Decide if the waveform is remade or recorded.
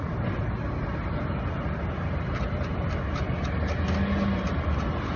recorded